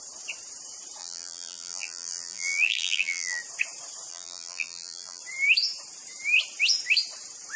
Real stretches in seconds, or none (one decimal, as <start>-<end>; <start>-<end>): 0.0-1.0; 3.4-4.1; 5.2-7.6